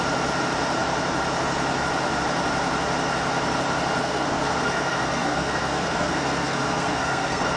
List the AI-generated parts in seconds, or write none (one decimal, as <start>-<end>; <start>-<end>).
4.0-7.6